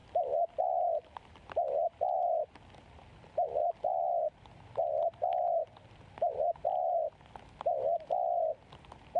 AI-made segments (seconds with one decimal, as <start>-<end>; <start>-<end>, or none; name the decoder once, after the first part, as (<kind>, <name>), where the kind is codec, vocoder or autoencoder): 3.6-5.9 (vocoder, BigVGAN v2)